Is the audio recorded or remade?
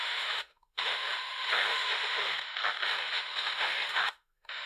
remade